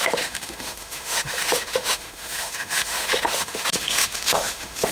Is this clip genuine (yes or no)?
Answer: no